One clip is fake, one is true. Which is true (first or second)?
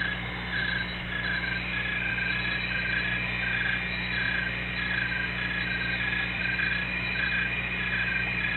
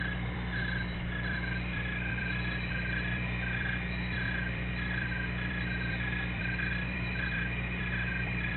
first